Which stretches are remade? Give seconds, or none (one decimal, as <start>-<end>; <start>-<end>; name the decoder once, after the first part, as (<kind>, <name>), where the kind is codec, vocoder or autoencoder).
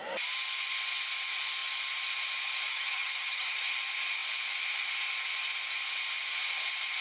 2.7-3.5 (vocoder, HiFi-GAN)